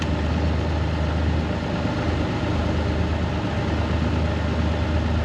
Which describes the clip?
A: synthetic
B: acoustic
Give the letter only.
B